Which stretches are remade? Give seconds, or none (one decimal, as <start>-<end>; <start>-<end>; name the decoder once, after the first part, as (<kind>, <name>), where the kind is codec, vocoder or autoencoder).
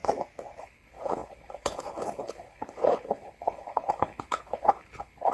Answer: 0.6-5.3 (codec, HILCodec)